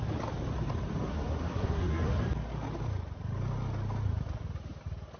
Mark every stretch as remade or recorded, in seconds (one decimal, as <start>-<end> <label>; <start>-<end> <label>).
0.0-1.1 recorded; 1.1-2.2 remade; 2.2-5.2 recorded